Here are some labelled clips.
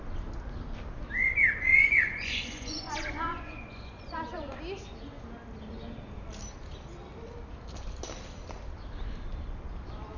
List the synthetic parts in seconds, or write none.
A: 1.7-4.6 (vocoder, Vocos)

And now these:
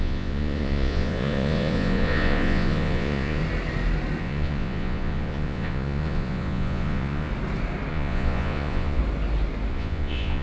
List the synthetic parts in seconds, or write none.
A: 0.0-3.4 (vocoder, Vocos); 4.2-7.3; 7.9-9.0; 9.7-10.4

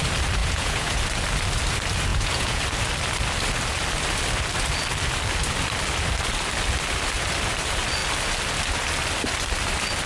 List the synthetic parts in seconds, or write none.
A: 0.4-1.0 (vocoder, Vocos); 2.1-2.6

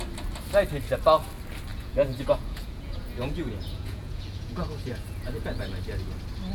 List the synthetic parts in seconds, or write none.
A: 1.7-5.6 (vocoder, Vocos)

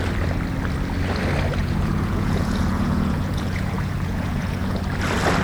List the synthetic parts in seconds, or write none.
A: 1.6-4.8 (vocoder, Vocos)